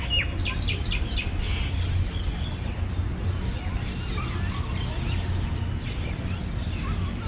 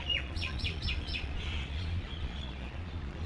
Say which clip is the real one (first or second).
first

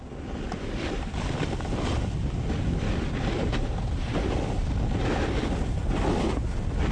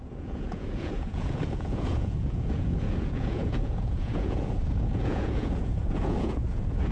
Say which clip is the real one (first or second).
first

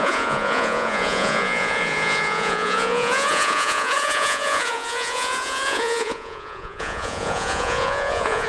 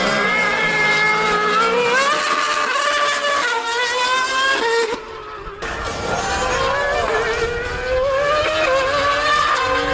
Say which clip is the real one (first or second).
second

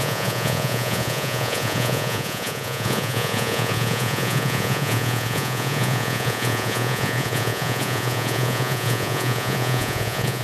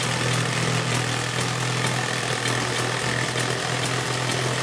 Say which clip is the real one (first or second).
second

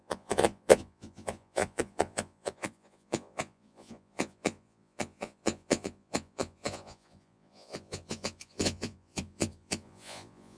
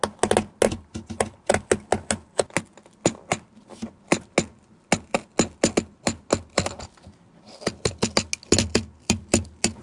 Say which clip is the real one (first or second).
second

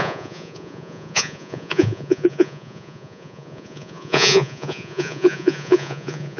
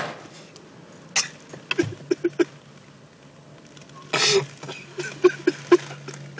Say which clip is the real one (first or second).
second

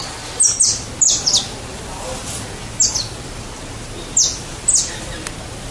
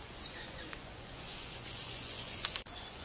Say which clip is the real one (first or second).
first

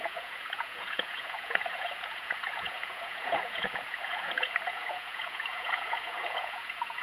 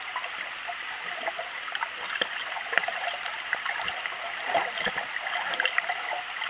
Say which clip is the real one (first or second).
second